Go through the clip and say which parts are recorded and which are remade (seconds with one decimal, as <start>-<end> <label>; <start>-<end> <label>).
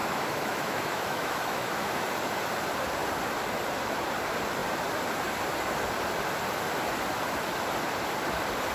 0.0-2.1 remade; 2.1-8.7 recorded